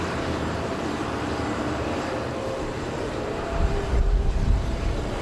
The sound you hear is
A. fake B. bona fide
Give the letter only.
A